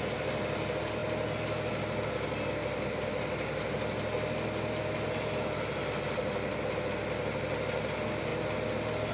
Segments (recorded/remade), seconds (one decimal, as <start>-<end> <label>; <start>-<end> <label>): 0.0-9.1 recorded